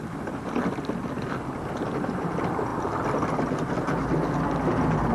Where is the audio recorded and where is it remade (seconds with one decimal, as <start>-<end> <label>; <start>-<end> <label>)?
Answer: 0.0-5.1 recorded